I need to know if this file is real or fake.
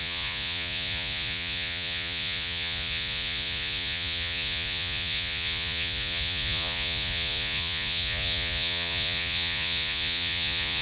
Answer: fake